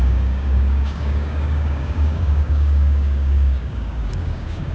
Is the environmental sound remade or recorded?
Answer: remade